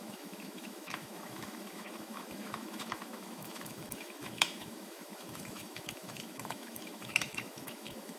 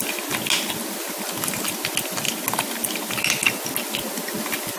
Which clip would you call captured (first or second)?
second